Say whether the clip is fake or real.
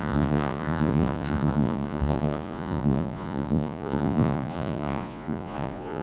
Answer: fake